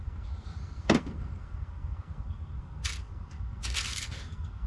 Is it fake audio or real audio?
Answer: fake